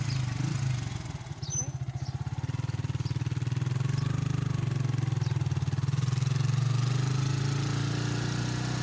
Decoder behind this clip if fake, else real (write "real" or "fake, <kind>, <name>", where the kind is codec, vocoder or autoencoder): real